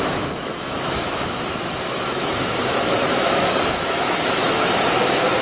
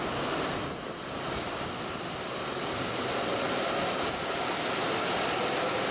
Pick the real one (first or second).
second